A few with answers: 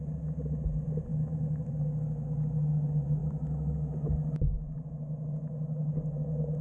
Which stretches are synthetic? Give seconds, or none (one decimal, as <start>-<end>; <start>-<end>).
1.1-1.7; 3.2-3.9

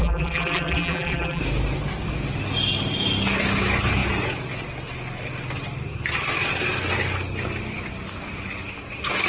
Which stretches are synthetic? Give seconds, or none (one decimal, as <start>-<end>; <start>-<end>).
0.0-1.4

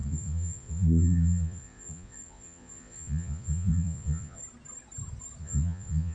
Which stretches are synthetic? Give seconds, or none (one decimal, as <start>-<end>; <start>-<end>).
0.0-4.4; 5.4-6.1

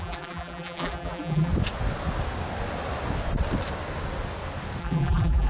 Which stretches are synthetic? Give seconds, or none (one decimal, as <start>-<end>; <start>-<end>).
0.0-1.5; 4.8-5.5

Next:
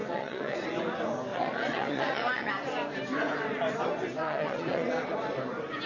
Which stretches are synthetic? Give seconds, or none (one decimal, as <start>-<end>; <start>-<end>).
0.0-0.7; 1.3-2.5; 4.2-4.9

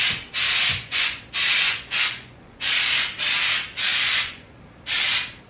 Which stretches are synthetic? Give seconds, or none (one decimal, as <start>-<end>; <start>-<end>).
0.7-1.2; 1.6-2.7; 3.9-4.6

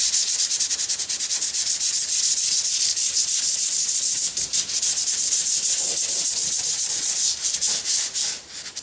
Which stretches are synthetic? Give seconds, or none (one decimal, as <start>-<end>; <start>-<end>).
none